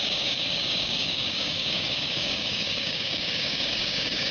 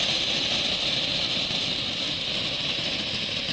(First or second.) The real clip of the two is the second